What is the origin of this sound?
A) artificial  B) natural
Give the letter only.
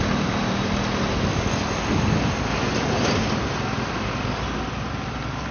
A